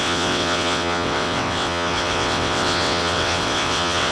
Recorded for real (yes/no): no